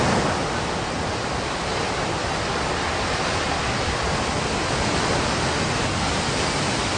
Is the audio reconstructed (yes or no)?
no